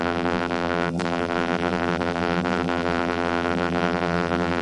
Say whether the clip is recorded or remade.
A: remade